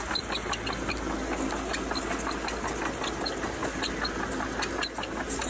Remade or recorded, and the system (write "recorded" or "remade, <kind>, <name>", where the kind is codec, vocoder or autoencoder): recorded